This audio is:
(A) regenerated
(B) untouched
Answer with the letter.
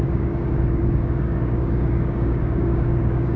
A